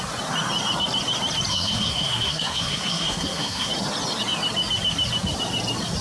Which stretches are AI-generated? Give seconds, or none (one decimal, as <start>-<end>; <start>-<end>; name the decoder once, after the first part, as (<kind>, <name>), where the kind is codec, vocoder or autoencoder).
1.5-3.7 (codec, SNAC)